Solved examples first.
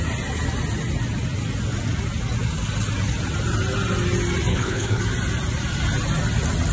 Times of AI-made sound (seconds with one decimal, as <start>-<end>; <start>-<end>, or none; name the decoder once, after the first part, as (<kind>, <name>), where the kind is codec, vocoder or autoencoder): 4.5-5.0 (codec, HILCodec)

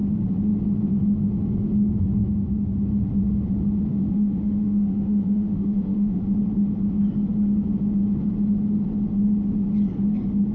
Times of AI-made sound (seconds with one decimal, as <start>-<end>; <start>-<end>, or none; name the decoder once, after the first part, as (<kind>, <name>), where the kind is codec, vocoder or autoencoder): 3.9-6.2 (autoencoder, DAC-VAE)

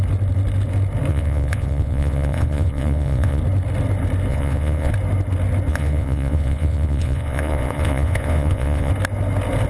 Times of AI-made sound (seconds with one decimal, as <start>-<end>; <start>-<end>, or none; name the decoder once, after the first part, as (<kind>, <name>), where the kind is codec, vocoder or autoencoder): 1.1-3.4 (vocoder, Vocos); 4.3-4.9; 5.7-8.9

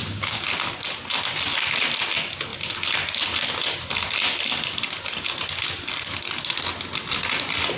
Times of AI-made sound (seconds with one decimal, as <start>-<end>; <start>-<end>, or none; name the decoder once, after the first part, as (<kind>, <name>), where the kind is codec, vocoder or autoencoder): 0.0-0.5 (codec, DAC)

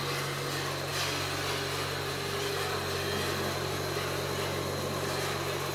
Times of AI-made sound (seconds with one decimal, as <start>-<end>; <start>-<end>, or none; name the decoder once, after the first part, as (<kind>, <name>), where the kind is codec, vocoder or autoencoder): none

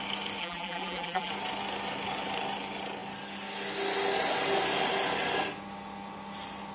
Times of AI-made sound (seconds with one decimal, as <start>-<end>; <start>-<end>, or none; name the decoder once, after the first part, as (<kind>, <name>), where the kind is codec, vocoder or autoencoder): 0.4-1.3 (vocoder, BigVGAN v2)

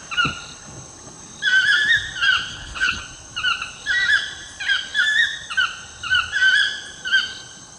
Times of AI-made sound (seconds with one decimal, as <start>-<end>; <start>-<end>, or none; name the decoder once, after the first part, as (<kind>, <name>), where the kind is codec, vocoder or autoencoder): 2.5-3.0 (codec, HILCodec)